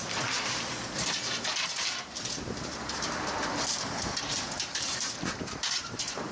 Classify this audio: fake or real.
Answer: fake